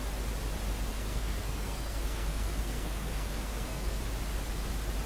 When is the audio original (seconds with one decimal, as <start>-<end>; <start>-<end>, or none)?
0.0-0.9; 4.0-5.1

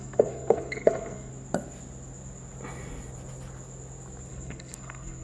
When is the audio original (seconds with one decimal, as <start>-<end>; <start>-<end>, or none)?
1.3-4.3

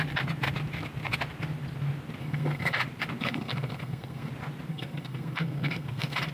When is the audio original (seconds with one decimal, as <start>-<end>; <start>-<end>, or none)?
0.0-2.2; 2.8-3.2; 4.3-4.7

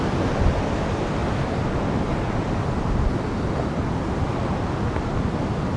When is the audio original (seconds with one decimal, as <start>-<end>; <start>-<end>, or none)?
0.0-5.8

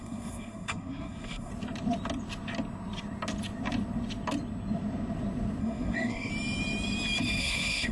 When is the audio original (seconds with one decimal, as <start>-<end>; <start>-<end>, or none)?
1.5-5.6; 6.3-7.4

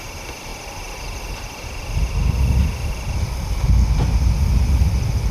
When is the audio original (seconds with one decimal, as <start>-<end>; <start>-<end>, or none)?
0.0-5.3

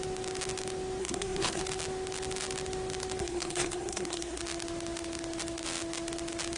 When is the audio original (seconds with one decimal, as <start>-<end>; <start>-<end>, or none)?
0.0-1.0; 1.6-3.2; 4.4-6.6

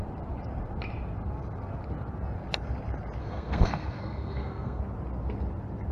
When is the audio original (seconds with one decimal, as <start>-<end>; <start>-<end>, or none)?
0.0-3.2; 4.8-5.9